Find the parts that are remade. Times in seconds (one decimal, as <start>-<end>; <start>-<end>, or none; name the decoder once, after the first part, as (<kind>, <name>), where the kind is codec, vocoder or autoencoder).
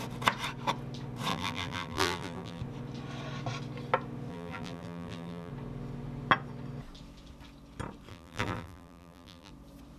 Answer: 1.3-2.6 (vocoder, BigVGAN v2); 4.3-5.5; 8.1-9.5